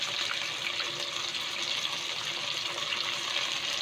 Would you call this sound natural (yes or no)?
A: yes